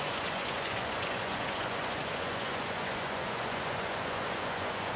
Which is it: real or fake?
fake